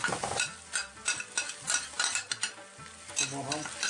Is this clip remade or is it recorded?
recorded